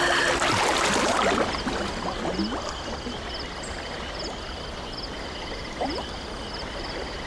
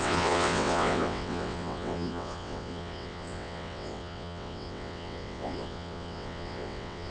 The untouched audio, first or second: first